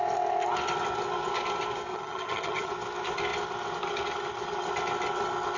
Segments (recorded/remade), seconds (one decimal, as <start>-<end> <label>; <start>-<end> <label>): 0.0-1.9 recorded; 1.9-2.7 remade; 2.7-5.6 recorded